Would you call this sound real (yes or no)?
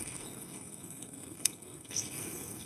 no